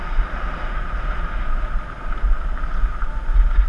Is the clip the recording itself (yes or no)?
yes